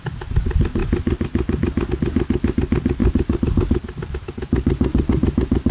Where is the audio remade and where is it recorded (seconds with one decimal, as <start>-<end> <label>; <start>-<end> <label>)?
0.0-5.7 recorded